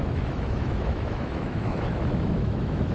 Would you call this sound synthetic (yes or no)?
yes